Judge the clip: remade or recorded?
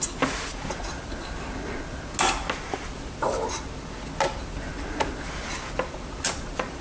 recorded